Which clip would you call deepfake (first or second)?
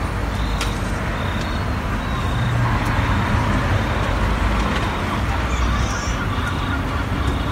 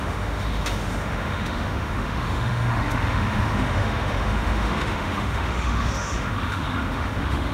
second